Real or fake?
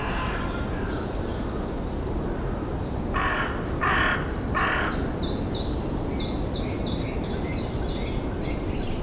real